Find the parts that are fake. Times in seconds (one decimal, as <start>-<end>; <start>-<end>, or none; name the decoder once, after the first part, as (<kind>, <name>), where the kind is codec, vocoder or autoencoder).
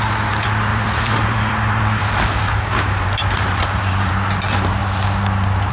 0.7-4.1 (vocoder, BigVGAN v2)